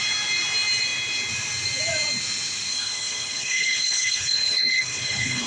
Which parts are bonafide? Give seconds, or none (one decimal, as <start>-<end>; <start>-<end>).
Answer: 0.0-2.7